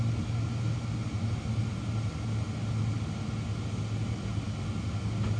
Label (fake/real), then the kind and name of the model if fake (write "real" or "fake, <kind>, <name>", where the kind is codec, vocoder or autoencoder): real